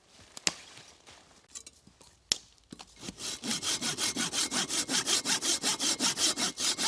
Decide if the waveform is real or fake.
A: real